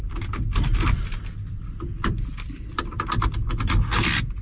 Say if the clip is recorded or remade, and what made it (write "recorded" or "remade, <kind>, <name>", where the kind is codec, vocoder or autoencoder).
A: remade, vocoder, BigVGAN v2